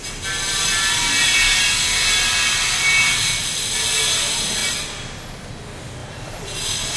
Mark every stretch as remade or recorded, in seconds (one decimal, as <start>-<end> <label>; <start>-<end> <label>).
0.0-4.6 recorded; 4.6-5.6 remade; 5.6-6.0 recorded; 6.0-7.0 remade

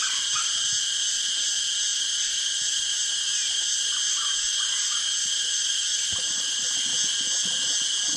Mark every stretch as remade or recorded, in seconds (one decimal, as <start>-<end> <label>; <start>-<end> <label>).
0.0-1.9 recorded; 1.9-6.8 remade; 6.8-8.2 recorded

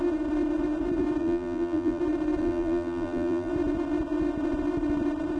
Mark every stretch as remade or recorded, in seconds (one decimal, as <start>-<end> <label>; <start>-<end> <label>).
0.0-1.2 recorded; 1.2-2.0 remade; 2.0-2.4 recorded; 2.4-3.5 remade; 3.5-5.4 recorded

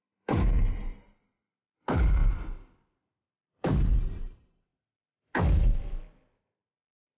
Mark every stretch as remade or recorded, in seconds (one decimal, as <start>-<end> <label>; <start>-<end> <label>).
0.0-2.2 remade; 2.2-2.8 recorded; 2.8-4.7 remade; 4.7-6.4 recorded; 6.4-7.2 remade

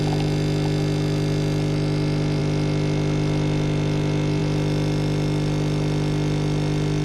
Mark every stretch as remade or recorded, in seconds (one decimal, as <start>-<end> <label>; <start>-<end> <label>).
0.0-7.0 recorded